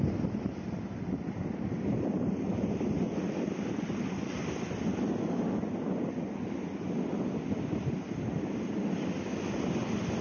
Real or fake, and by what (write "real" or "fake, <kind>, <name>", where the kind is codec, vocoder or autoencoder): real